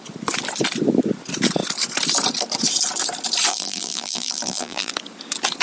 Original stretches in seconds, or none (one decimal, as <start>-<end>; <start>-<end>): 0.0-3.5; 4.9-5.6